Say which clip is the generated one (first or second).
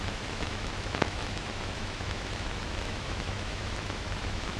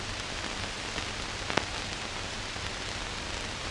first